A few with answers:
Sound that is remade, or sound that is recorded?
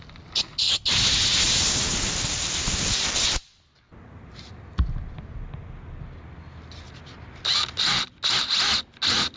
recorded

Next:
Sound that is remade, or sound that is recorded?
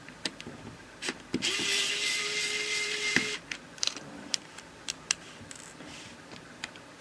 remade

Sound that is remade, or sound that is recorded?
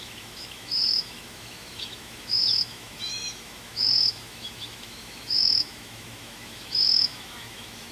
remade